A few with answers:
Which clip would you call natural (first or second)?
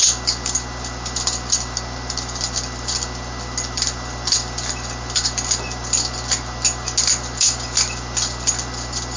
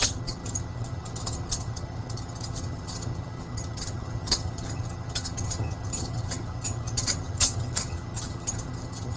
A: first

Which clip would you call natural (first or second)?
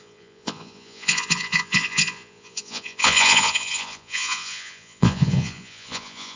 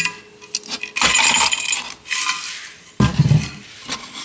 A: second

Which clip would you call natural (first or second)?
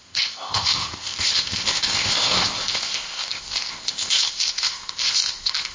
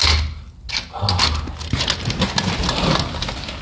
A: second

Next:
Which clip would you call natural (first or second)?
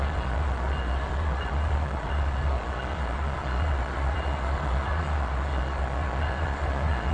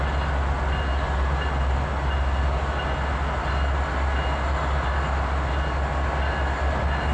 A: second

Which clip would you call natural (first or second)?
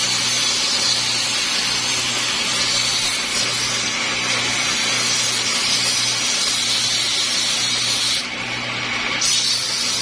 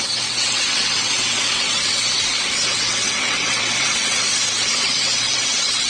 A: first